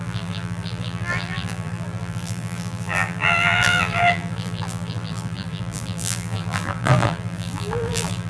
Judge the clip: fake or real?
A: fake